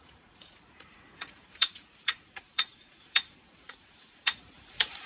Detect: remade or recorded remade